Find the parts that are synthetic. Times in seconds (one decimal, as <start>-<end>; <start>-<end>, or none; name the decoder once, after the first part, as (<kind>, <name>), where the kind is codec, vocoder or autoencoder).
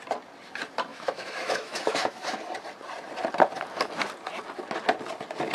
0.9-2.4 (autoencoder, DAC-VAE)